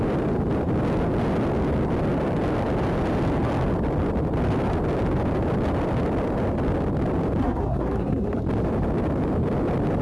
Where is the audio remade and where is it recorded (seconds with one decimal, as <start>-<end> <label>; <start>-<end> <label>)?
0.0-7.4 recorded; 7.4-8.4 remade; 8.4-10.0 recorded